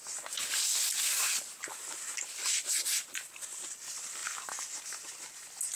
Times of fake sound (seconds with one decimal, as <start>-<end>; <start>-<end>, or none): 4.2-5.0